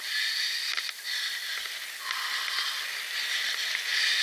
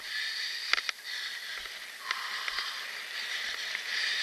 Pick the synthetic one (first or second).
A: second